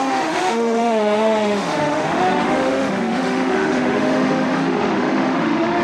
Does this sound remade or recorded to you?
remade